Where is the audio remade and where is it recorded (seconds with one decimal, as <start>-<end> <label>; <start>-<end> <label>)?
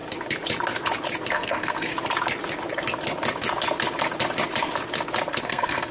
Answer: 0.0-1.3 recorded; 1.3-1.9 remade; 1.9-5.4 recorded; 5.4-5.9 remade